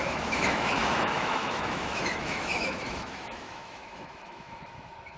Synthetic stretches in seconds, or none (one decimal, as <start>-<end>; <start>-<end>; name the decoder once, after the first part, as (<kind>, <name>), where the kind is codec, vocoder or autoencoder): 0.0-5.2 (autoencoder, DAC-VAE)